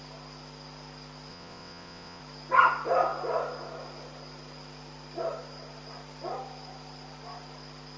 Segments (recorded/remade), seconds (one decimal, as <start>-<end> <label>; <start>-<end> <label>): 0.0-1.3 recorded; 1.3-2.2 remade; 2.2-8.0 recorded

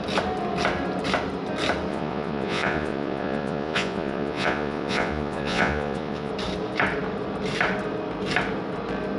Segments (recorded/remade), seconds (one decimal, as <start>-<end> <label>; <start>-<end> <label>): 0.0-1.9 recorded; 1.9-6.3 remade; 6.3-9.2 recorded

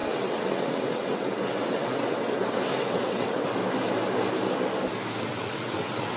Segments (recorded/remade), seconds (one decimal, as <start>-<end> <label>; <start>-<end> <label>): 0.0-3.6 remade; 3.6-5.2 recorded; 5.2-6.2 remade